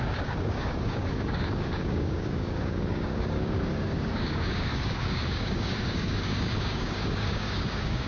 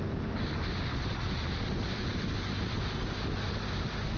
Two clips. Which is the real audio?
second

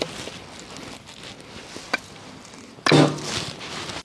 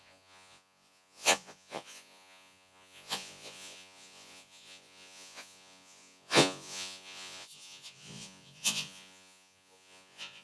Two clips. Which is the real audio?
first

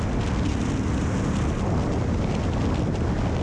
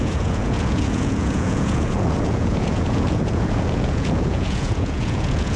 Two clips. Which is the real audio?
first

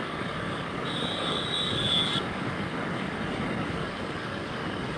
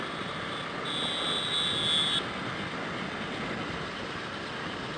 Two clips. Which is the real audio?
second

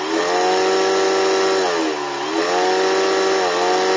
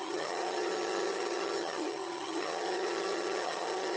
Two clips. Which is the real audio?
first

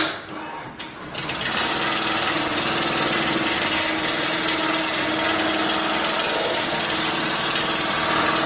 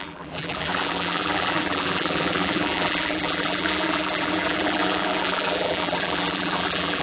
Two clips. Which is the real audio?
first